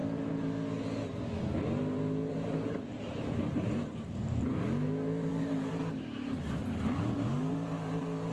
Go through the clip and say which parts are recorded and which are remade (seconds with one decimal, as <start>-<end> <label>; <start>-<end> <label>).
0.0-2.3 recorded; 2.3-4.2 remade; 4.2-5.3 recorded; 5.3-5.7 remade; 5.7-7.5 recorded; 7.5-8.3 remade